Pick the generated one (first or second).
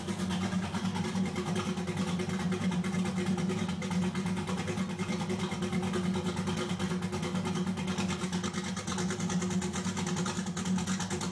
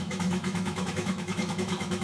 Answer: second